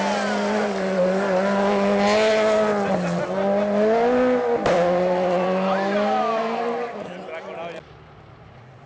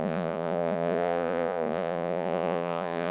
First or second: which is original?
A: first